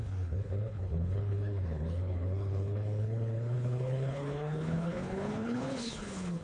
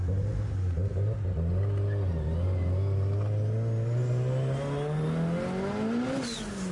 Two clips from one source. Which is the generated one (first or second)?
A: first